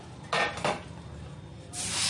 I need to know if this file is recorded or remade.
recorded